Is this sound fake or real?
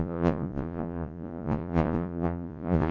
fake